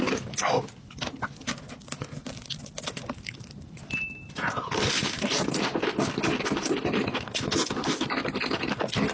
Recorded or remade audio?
recorded